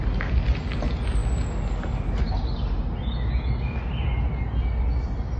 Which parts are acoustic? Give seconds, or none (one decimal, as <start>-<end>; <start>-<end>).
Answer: 0.0-5.4

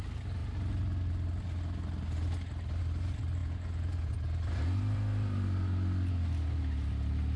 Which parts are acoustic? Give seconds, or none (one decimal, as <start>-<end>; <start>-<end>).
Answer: 0.0-3.4; 4.1-7.4